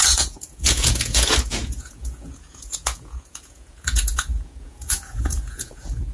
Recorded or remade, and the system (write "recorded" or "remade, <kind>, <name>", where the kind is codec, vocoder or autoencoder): remade, vocoder, Vocos